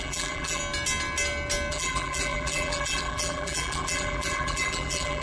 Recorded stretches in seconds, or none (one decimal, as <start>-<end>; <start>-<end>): 0.6-1.7